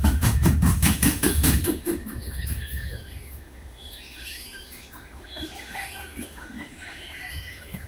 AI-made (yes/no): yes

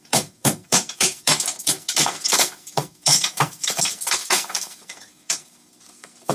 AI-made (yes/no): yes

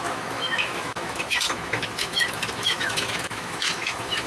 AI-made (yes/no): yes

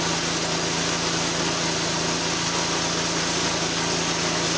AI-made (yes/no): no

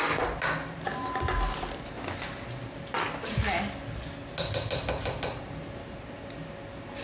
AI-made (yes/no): no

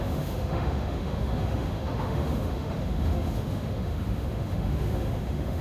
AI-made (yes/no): yes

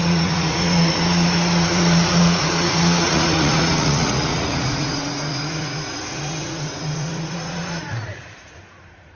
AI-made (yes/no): yes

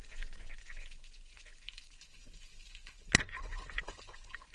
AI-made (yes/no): yes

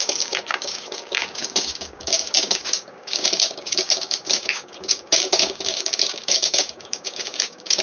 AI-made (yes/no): yes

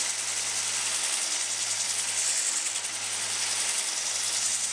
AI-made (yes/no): no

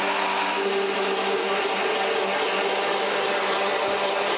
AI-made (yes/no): no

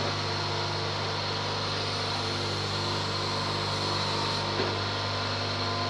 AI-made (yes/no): no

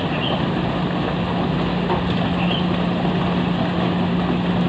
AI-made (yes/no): no